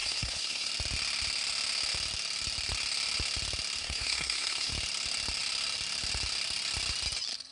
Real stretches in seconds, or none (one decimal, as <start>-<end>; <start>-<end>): 0.7-3.8; 4.7-7.5